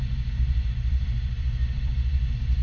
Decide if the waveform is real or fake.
fake